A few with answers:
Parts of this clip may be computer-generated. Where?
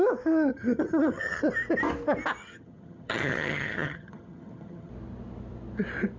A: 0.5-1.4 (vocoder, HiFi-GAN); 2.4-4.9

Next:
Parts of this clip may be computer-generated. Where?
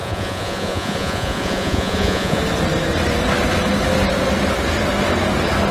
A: 0.0-2.4 (vocoder, Vocos)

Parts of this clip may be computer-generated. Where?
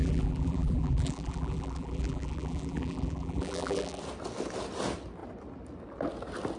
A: 0.0-4.0 (vocoder, BigVGAN v2)